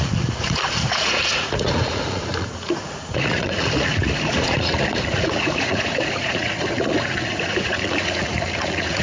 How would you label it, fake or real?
fake